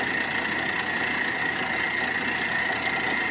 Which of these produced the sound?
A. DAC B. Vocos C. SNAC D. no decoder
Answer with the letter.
D